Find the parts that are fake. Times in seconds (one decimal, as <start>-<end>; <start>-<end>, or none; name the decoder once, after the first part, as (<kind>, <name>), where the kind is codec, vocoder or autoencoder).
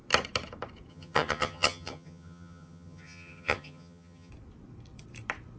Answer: 0.9-4.3 (vocoder, HiFi-GAN)